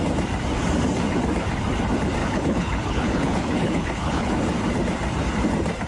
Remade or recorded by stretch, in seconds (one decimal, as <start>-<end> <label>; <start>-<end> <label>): 0.0-2.2 recorded; 2.2-4.4 remade; 4.4-5.9 recorded